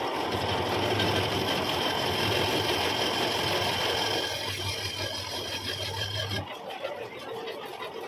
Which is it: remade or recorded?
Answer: recorded